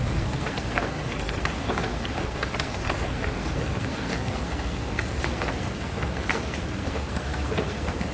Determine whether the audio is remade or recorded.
remade